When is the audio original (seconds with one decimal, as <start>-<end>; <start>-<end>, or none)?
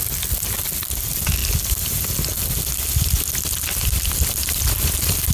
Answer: 0.0-5.3